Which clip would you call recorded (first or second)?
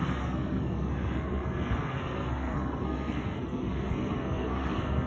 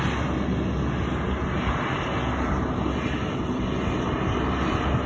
second